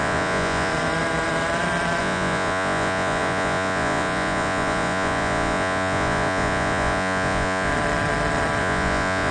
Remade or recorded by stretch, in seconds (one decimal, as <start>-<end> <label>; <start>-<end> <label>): 0.0-0.7 remade; 0.7-2.0 recorded; 2.0-7.7 remade; 7.7-8.6 recorded; 8.6-9.3 remade